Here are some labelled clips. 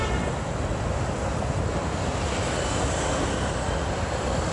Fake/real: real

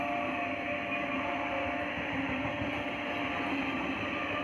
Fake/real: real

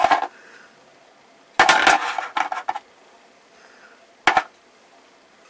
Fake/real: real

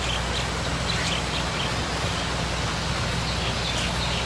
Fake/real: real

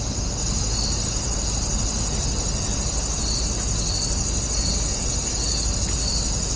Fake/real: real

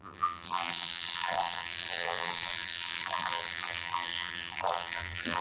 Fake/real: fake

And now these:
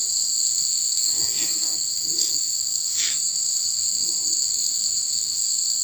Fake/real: fake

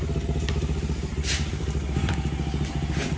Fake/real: real